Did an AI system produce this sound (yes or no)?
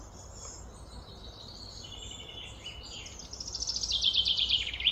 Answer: no